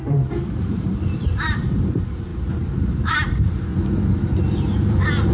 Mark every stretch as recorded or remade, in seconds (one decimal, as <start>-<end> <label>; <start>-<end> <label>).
0.0-2.3 remade; 2.3-2.9 recorded; 2.9-3.7 remade; 3.7-4.4 recorded; 4.4-5.3 remade